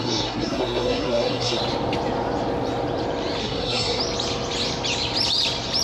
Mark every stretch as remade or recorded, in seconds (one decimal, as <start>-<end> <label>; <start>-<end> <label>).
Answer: 0.0-1.6 remade; 1.6-3.4 recorded; 3.4-4.0 remade; 4.0-5.8 recorded